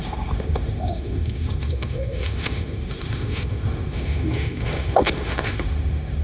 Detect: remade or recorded remade